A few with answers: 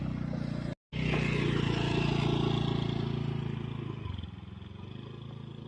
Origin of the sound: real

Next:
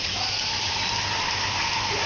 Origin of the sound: real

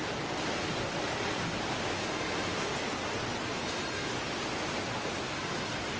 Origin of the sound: real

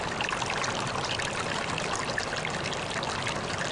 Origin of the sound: real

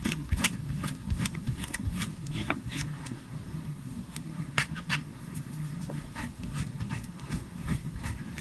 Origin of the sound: fake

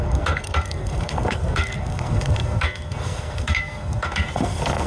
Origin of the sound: fake